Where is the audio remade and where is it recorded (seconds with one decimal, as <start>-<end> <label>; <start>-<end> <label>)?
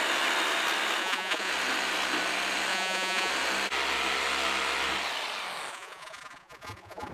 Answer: 0.0-1.0 recorded; 1.0-1.5 remade; 1.5-2.7 recorded; 2.7-3.3 remade; 3.3-5.7 recorded; 5.7-7.1 remade